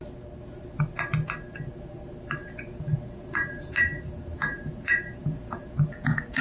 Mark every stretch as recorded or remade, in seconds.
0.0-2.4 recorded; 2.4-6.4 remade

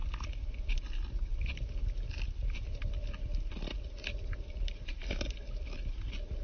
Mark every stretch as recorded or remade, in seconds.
0.0-6.4 recorded

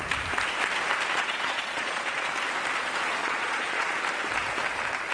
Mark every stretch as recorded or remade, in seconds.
0.0-1.1 recorded; 1.1-2.3 remade; 2.3-3.2 recorded; 3.2-4.0 remade; 4.0-5.1 recorded

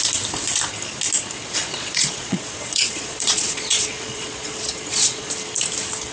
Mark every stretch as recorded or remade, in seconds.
0.0-1.6 recorded; 1.6-5.3 remade; 5.3-6.1 recorded

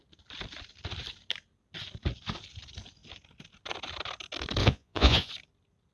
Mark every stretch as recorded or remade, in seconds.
0.0-4.6 recorded; 4.6-5.3 remade; 5.3-5.9 recorded

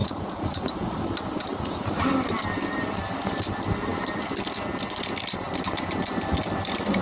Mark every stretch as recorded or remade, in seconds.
0.0-1.0 remade; 1.0-1.5 recorded; 1.5-2.0 remade; 2.0-7.0 recorded